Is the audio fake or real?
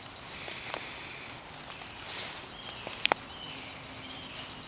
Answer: real